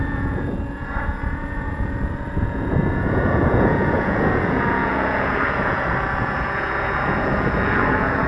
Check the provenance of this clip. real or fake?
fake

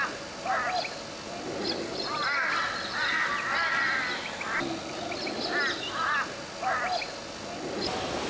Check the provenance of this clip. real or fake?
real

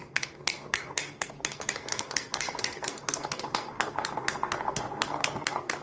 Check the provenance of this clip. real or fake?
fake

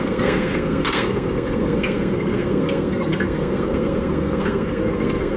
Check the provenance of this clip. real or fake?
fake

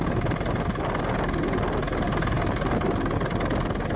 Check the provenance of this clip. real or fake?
real